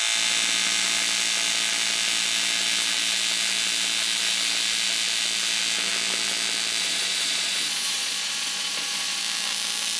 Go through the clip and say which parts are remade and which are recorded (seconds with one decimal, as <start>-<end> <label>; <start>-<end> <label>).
0.0-6.8 recorded; 6.8-9.2 remade; 9.2-10.0 recorded